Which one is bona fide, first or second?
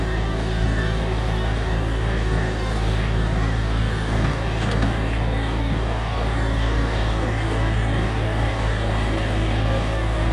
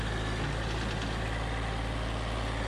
second